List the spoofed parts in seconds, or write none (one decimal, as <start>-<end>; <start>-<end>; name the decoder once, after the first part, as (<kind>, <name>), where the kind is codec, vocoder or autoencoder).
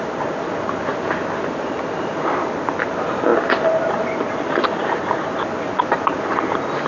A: none